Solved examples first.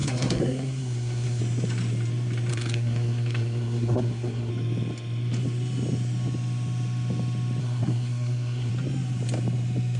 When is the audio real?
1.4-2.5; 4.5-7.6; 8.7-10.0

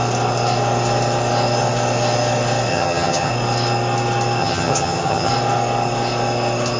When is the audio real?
0.0-2.7; 3.3-4.4; 5.3-6.8

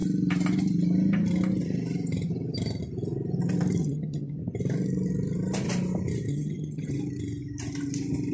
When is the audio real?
0.0-3.8; 4.4-6.3; 6.9-8.3

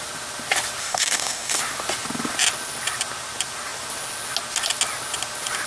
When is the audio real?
0.0-0.8; 1.6-5.7

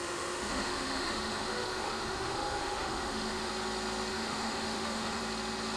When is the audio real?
3.5-4.1; 5.2-5.8

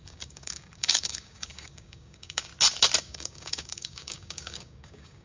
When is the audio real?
2.5-3.0